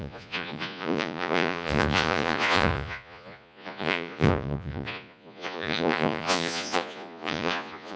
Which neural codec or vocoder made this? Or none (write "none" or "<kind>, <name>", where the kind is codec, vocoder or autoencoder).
vocoder, Vocos